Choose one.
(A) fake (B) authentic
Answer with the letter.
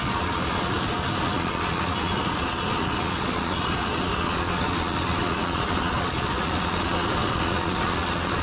A